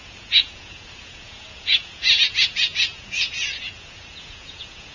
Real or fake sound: fake